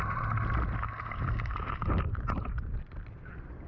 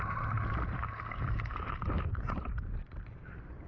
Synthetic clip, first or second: second